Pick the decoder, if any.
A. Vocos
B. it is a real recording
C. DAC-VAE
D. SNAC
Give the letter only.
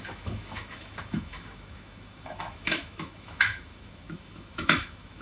C